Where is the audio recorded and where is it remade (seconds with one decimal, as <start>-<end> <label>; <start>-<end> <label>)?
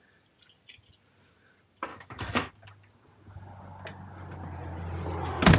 0.0-1.9 recorded; 1.9-2.5 remade; 2.5-5.6 recorded